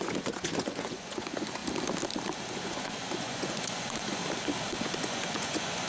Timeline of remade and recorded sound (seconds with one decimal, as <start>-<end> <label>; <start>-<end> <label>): 0.0-1.6 remade; 1.6-2.5 recorded; 2.5-4.2 remade; 4.2-4.8 recorded; 4.8-5.9 remade